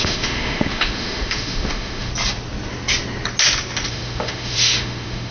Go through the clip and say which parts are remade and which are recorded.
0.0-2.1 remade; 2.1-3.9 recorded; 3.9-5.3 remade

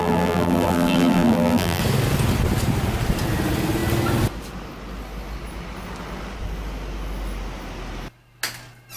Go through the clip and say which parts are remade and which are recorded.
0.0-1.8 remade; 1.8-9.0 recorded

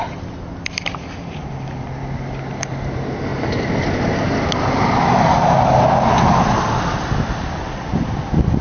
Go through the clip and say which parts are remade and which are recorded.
0.0-8.6 recorded

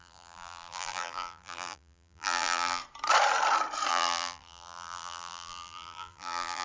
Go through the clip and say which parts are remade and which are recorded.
0.0-2.8 remade; 2.8-3.9 recorded; 3.9-6.6 remade